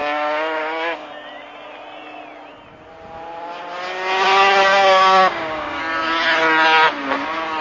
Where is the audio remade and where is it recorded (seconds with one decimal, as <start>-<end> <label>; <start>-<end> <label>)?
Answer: 0.0-1.1 remade; 1.1-4.7 recorded; 4.7-5.8 remade; 5.8-7.6 recorded